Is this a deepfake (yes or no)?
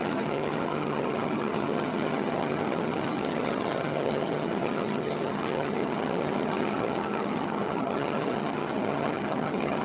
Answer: yes